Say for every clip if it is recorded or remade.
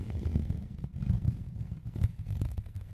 remade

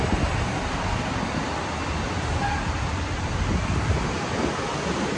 recorded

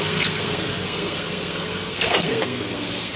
remade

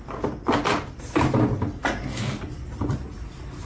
recorded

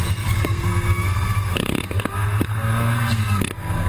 remade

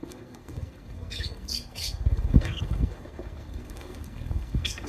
remade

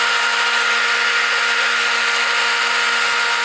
recorded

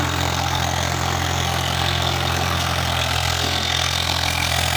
remade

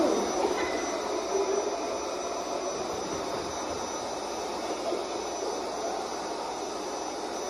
recorded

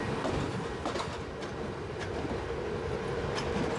recorded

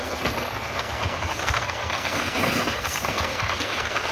remade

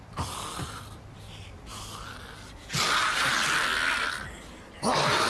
recorded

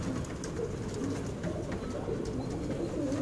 recorded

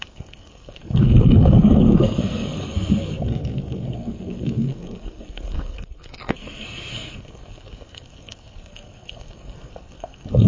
remade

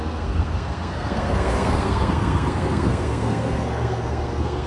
remade